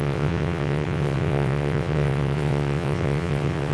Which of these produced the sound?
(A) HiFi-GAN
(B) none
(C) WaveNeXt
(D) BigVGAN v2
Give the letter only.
C